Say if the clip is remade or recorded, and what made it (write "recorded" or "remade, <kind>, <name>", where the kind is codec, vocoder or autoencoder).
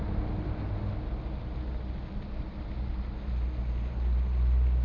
recorded